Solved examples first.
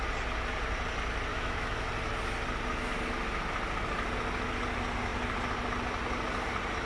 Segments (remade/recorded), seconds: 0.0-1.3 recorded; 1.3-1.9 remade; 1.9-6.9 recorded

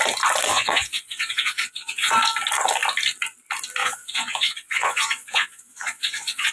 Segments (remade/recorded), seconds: 0.0-0.5 recorded; 0.5-2.1 remade; 2.1-3.8 recorded; 3.8-6.5 remade

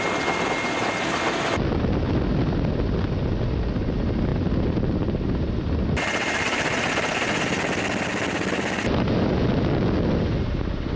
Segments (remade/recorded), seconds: 0.0-11.0 recorded

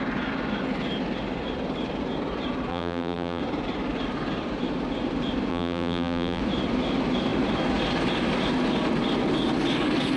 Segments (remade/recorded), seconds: 0.0-2.7 recorded; 2.7-3.4 remade; 3.4-5.5 recorded; 5.5-6.4 remade; 6.4-10.2 recorded

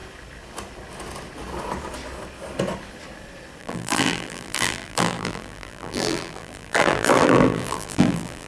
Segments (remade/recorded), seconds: 0.0-3.6 recorded; 3.6-8.5 remade